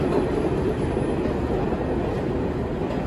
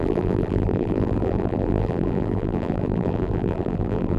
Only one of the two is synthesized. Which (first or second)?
second